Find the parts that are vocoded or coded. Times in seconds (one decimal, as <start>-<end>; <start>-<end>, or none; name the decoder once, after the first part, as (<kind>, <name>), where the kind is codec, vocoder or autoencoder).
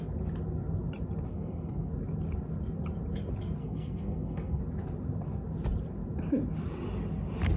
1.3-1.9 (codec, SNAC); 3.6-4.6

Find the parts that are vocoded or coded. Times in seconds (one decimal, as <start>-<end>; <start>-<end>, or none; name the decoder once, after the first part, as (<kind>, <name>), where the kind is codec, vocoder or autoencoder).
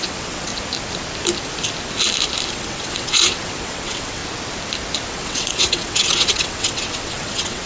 0.0-0.5 (vocoder, WaveNeXt); 2.5-4.2; 5.1-7.7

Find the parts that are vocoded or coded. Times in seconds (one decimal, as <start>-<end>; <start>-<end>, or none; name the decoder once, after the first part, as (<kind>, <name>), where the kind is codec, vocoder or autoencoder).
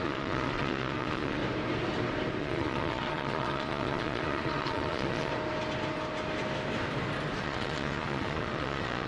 0.0-1.4 (vocoder, Vocos); 2.4-5.3; 7.4-9.1